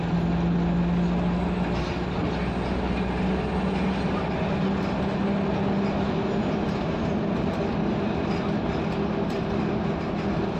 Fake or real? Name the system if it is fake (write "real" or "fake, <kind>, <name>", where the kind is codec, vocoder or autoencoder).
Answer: real